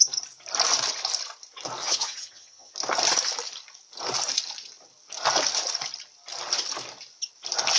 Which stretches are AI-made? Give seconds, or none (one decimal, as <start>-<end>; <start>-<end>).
1.8-2.7